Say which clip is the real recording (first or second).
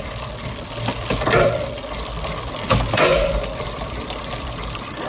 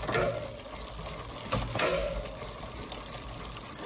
second